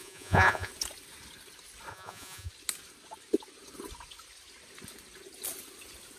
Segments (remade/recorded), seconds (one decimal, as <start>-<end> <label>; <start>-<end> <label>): 0.0-0.7 remade; 0.7-1.9 recorded; 1.9-2.5 remade; 2.5-6.2 recorded